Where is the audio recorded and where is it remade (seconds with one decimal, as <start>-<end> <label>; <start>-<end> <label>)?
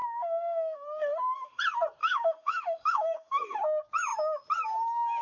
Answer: 0.0-1.6 remade; 1.6-2.0 recorded; 2.0-3.6 remade; 3.6-5.2 recorded